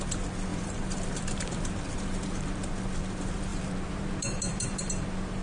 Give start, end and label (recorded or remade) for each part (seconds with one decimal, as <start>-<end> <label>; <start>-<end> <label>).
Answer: 0.0-0.5 recorded; 0.5-2.2 remade; 2.2-3.5 recorded; 3.5-4.9 remade; 4.9-5.4 recorded